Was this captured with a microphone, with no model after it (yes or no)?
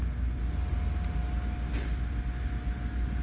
yes